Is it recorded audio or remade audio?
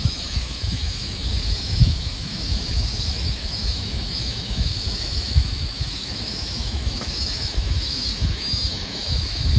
remade